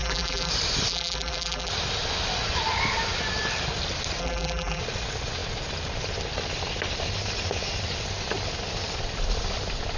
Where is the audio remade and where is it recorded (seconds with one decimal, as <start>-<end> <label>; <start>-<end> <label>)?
0.0-0.5 remade; 0.5-0.9 recorded; 0.9-1.7 remade; 1.7-4.2 recorded; 4.2-4.8 remade; 4.8-10.0 recorded